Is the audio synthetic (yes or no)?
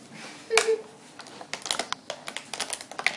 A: no